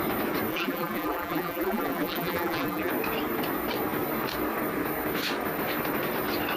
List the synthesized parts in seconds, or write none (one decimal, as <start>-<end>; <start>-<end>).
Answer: 0.5-2.9